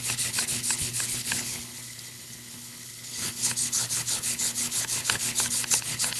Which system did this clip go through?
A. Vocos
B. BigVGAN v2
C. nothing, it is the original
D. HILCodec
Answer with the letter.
D